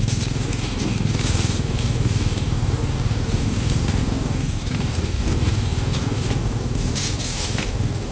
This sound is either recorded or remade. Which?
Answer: remade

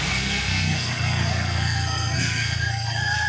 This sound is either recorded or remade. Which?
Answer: remade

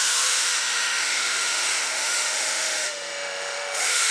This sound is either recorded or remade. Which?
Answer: remade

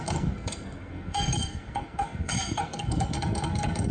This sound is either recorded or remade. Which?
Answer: remade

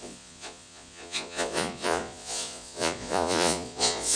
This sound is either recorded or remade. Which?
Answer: remade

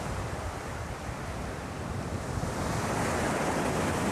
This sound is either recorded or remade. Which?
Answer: remade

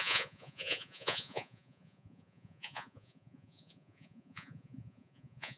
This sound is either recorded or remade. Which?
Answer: remade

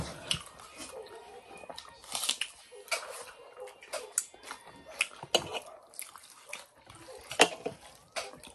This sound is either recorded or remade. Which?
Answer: recorded